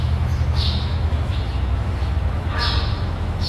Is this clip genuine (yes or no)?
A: no